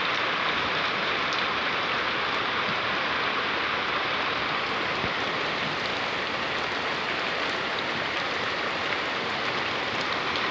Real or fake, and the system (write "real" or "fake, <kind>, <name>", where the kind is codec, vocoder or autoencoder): real